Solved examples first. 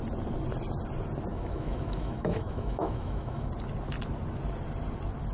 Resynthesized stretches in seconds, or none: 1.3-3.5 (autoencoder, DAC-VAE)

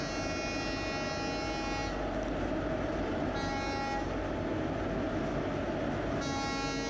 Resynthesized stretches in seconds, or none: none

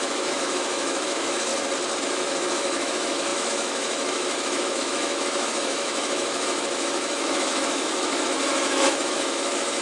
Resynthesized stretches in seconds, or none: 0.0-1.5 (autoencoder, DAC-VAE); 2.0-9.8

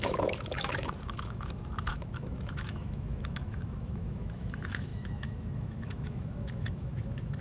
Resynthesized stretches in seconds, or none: 0.0-7.4 (autoencoder, DAC-VAE)